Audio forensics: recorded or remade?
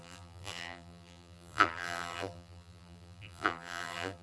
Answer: remade